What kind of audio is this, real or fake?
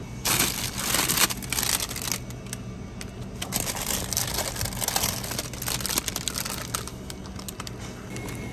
real